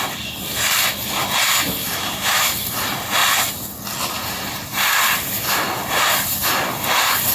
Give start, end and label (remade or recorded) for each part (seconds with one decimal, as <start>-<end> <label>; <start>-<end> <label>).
0.0-1.8 recorded; 1.8-2.5 remade; 2.5-7.3 recorded